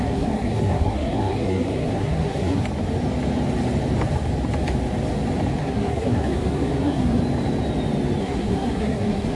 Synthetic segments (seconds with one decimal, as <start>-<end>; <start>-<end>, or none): 0.0-2.6; 5.6-7.2; 8.2-9.3